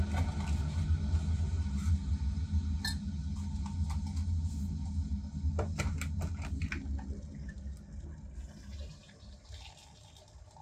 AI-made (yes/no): no